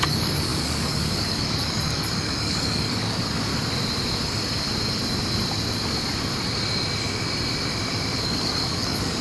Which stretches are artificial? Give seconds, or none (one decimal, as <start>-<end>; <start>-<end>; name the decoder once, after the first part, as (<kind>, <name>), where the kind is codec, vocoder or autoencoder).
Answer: 0.0-3.5 (codec, DAC); 8.2-9.2